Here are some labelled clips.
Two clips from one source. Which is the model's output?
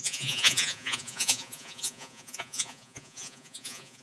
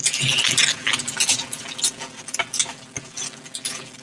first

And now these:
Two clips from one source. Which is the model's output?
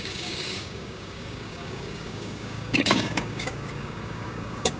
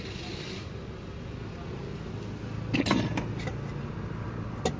first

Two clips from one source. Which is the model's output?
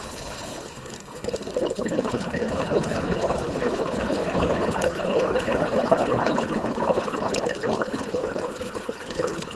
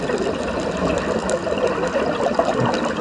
first